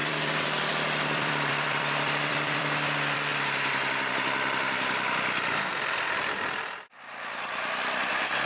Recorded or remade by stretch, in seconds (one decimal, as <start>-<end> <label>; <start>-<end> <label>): 0.0-3.3 remade; 3.3-4.1 recorded; 4.1-8.5 remade